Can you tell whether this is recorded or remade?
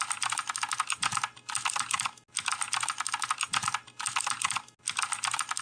recorded